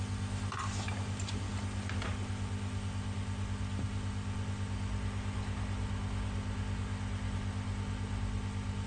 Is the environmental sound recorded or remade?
recorded